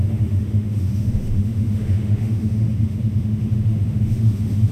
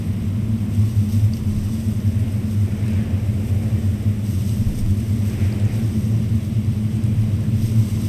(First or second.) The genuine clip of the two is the second